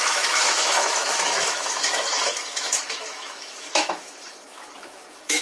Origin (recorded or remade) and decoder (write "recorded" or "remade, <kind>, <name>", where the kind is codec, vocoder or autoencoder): remade, autoencoder, DAC-VAE